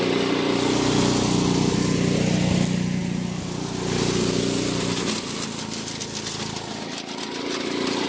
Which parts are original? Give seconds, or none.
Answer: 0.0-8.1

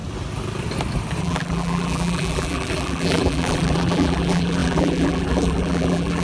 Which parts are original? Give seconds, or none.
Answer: 0.0-1.2

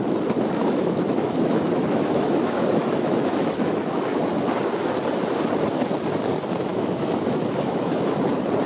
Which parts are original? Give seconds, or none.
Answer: 0.0-0.6; 4.2-6.7; 8.2-8.7